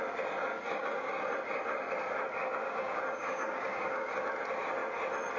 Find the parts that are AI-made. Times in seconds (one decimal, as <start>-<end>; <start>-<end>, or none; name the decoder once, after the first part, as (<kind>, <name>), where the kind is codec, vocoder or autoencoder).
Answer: 0.5-1.1 (codec, DAC); 2.6-4.2